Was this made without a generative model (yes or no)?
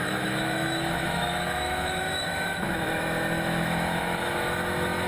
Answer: no